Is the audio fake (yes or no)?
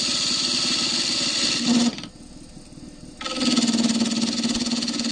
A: no